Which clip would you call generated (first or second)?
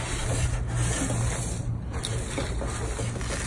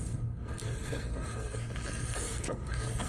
second